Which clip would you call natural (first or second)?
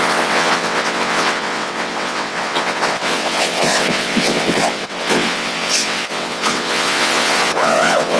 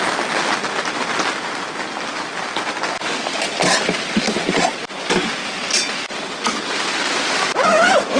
second